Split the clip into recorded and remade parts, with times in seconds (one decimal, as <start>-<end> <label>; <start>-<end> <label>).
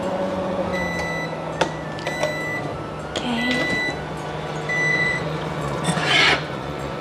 0.0-0.7 remade; 0.7-4.9 recorded; 4.9-7.0 remade